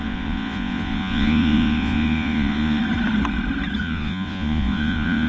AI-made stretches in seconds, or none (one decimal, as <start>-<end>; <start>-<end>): 0.0-2.8; 3.8-5.3